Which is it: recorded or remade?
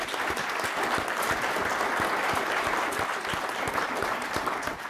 recorded